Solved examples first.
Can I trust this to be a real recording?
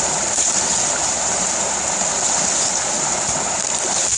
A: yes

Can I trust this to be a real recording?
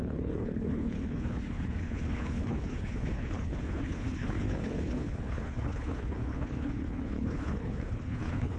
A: no